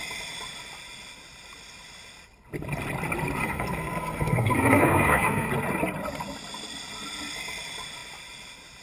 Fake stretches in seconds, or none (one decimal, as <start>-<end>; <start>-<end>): 3.4-5.5